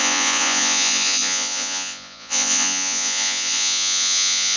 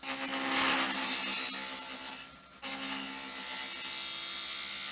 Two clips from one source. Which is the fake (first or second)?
first